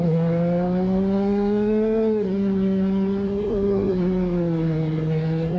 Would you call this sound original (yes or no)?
no